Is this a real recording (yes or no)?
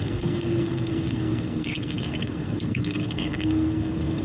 no